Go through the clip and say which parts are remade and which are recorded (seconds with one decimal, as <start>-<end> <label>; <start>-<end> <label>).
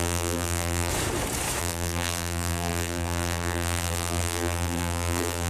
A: 0.0-0.9 remade; 0.9-1.6 recorded; 1.6-5.5 remade